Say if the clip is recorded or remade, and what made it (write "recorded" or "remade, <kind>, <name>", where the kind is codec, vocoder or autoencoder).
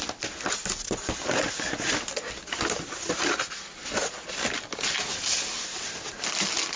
recorded